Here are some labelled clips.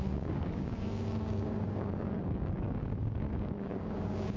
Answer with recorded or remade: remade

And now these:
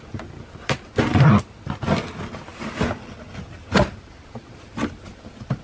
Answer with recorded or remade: recorded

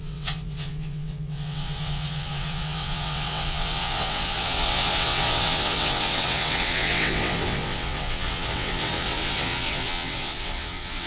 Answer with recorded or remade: remade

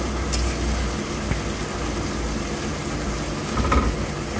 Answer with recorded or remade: recorded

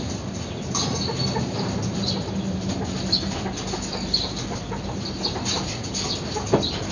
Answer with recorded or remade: recorded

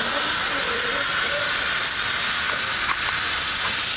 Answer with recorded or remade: recorded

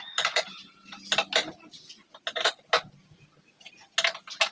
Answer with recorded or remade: recorded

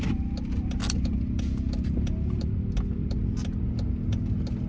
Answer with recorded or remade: recorded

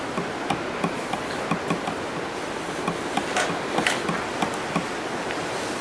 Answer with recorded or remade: recorded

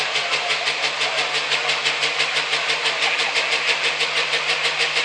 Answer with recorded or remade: recorded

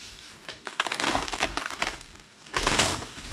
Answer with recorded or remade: remade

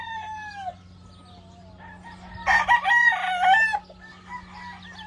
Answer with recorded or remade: recorded